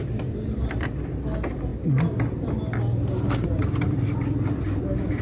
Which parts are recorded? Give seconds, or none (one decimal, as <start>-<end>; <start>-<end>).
1.0-5.2